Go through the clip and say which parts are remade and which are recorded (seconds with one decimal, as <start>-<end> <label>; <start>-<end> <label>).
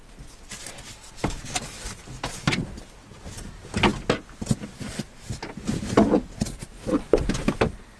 0.0-8.0 recorded